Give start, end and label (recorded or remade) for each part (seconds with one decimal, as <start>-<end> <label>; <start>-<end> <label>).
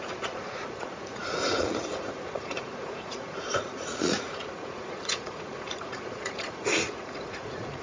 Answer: 0.0-7.8 remade